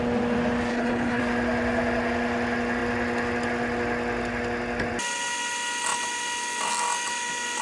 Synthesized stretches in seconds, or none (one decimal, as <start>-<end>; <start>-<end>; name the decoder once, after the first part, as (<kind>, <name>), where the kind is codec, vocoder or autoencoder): 0.7-1.2 (codec, HILCodec)